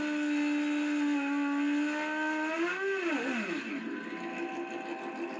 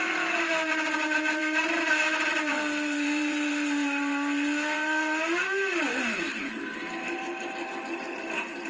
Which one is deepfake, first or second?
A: second